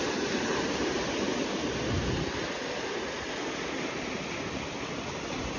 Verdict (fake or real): real